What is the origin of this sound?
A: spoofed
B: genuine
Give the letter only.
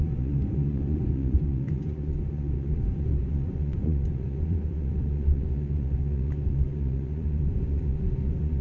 A